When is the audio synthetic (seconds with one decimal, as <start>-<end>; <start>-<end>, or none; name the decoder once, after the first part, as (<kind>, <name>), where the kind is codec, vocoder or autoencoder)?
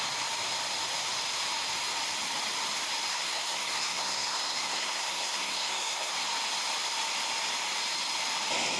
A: 3.1-6.1 (codec, SNAC)